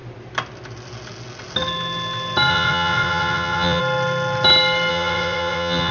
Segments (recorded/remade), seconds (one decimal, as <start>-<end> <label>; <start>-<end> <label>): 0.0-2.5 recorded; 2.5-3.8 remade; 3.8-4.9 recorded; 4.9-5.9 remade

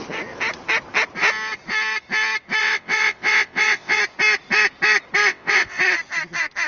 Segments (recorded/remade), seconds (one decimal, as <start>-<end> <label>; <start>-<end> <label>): 0.0-2.6 recorded; 2.6-4.0 remade; 4.0-5.3 recorded; 5.3-5.8 remade; 5.8-6.7 recorded

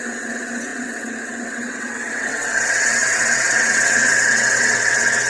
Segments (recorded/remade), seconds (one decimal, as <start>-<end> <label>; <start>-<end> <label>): 0.0-5.3 remade

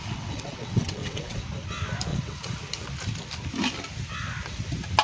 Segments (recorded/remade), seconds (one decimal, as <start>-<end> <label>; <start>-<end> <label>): 0.0-1.4 remade; 1.4-2.1 recorded; 2.1-2.6 remade; 2.6-5.0 recorded

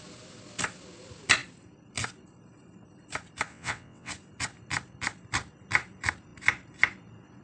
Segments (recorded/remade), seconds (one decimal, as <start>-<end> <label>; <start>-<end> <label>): 0.0-3.5 recorded; 3.5-4.1 remade; 4.1-7.4 recorded

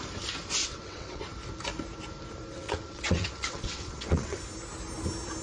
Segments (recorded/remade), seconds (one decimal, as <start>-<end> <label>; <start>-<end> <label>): 0.0-0.6 recorded; 0.6-1.2 remade; 1.2-2.5 recorded; 2.5-4.4 remade; 4.4-5.4 recorded

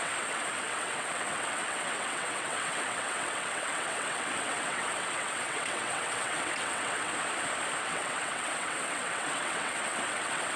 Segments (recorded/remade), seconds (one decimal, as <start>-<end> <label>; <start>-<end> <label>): 0.0-7.1 remade; 7.1-7.8 recorded; 7.8-10.6 remade

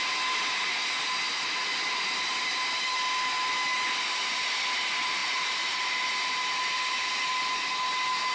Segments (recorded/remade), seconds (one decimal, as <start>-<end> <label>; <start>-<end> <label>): 0.0-8.3 recorded